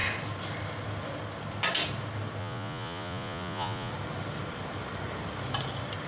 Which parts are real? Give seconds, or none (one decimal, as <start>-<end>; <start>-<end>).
0.0-2.4; 3.9-6.1